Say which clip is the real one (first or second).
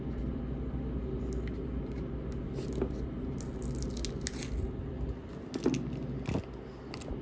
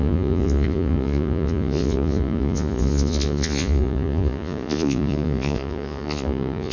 first